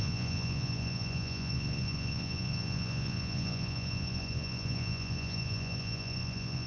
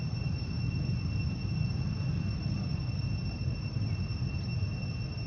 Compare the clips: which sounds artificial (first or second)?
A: first